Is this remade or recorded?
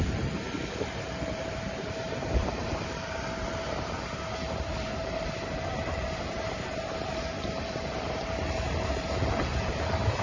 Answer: remade